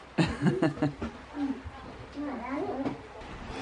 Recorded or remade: recorded